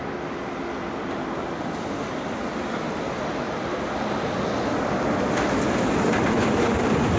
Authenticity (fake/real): real